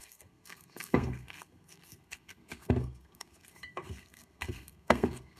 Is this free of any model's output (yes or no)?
no